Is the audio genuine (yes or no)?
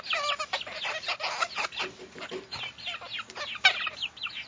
yes